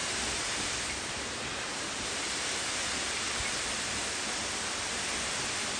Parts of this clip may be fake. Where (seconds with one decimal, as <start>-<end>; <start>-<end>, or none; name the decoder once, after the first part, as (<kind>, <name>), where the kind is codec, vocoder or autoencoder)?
none